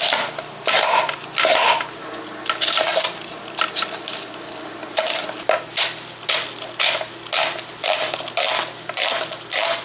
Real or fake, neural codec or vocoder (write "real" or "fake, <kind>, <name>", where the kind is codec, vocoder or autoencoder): real